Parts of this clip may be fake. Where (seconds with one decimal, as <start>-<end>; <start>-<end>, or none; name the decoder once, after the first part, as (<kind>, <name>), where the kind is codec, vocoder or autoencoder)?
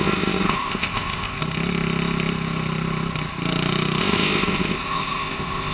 0.0-1.4 (codec, ZipCodec); 4.0-5.7